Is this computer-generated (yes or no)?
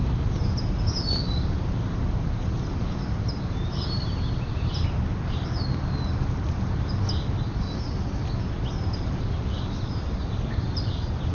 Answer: no